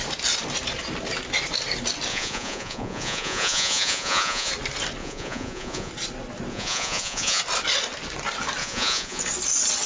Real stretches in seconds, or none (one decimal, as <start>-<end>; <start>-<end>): 0.0-2.1; 4.5-5.0; 5.9-6.5; 7.4-8.6; 9.2-9.9